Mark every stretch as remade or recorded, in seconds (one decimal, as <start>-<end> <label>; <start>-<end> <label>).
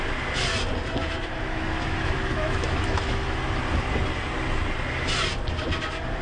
0.0-1.0 recorded; 1.0-3.4 remade; 3.4-6.2 recorded